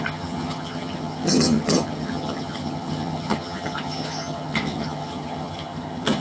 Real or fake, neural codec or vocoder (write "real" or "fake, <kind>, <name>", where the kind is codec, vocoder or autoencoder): fake, vocoder, HiFi-GAN